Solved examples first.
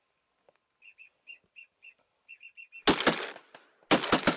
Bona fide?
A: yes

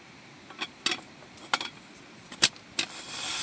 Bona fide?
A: yes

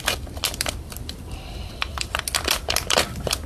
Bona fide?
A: yes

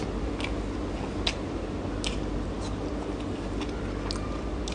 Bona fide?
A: yes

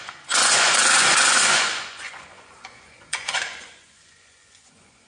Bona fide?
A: no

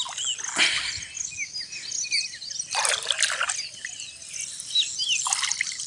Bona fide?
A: yes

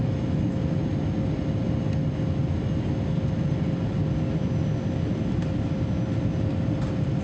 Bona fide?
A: yes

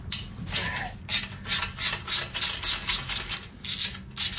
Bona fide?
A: yes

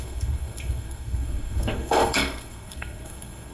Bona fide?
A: no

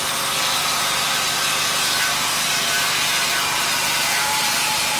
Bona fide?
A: no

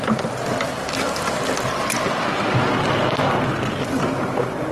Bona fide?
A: yes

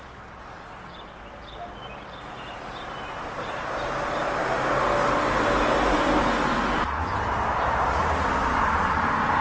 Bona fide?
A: yes